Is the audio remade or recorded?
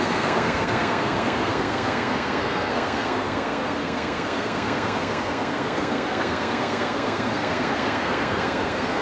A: remade